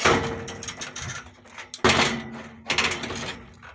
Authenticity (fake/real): real